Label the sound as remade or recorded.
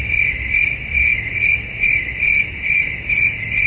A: recorded